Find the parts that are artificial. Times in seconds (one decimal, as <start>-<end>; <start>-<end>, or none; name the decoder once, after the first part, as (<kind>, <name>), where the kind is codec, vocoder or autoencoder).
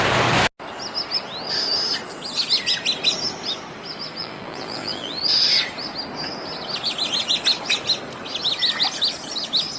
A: 4.2-5.2 (vocoder, BigVGAN v2)